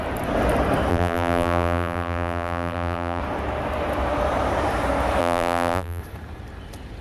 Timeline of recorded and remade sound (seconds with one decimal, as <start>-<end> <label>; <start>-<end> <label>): 0.0-0.9 recorded; 0.9-3.2 remade; 3.2-5.2 recorded; 5.2-6.0 remade; 6.0-7.0 recorded